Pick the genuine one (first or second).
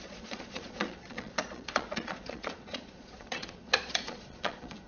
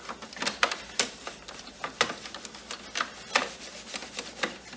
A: second